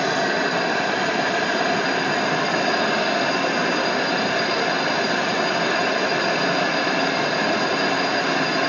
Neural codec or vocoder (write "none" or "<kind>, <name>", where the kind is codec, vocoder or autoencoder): none